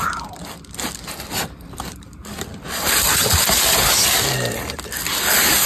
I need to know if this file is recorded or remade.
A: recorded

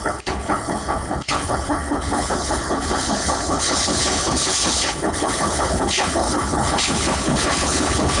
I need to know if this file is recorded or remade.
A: remade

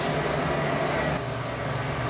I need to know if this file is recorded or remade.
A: recorded